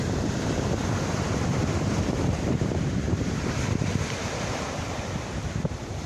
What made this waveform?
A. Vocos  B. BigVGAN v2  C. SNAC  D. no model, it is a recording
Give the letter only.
B